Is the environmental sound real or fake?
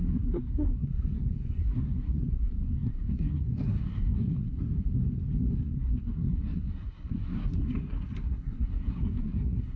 fake